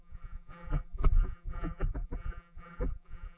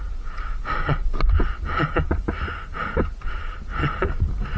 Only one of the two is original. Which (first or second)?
second